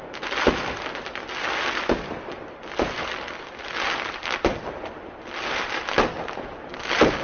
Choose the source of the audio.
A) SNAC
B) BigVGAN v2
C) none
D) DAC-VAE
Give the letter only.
C